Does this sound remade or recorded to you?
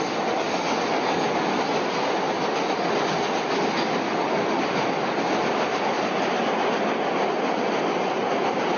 recorded